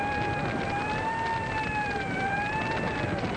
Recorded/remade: recorded